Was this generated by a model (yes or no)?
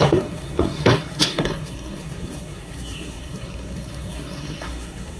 yes